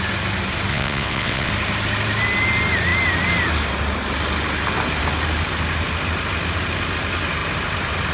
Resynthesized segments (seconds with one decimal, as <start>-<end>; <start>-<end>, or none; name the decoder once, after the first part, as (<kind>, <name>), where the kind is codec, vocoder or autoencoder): 0.7-1.5 (vocoder, WaveNeXt)

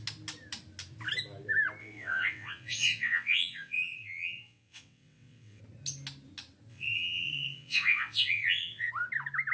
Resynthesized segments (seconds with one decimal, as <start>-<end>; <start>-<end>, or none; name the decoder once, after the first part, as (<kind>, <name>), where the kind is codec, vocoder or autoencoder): 1.8-5.6 (vocoder, WaveNeXt); 6.7-8.9

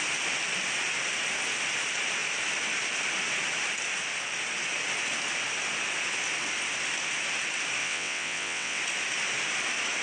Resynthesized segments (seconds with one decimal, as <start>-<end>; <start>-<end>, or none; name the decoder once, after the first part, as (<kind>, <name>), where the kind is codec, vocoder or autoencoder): 7.8-8.8 (vocoder, WaveNeXt)

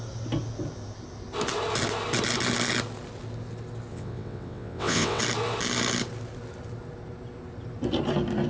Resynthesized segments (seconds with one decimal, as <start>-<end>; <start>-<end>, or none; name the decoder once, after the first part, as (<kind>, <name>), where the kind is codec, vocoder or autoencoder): 3.9-5.2 (vocoder, WaveNeXt)

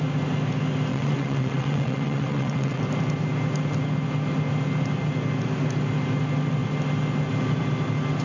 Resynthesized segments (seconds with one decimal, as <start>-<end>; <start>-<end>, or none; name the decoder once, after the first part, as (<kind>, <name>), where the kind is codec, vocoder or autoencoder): 0.9-2.8 (vocoder, WaveNeXt)

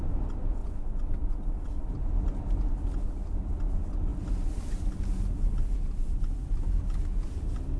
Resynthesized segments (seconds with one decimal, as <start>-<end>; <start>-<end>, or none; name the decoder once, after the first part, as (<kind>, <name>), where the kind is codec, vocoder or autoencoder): 0.6-1.9 (vocoder, WaveNeXt)